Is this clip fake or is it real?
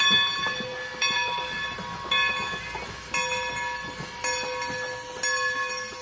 real